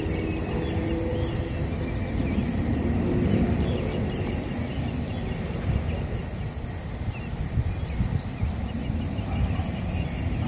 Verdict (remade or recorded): recorded